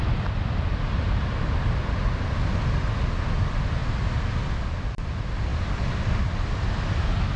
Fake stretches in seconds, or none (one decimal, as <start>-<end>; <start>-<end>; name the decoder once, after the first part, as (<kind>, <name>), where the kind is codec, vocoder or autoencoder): none